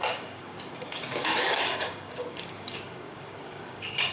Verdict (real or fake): fake